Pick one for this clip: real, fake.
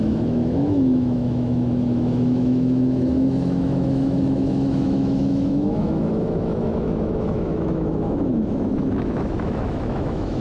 fake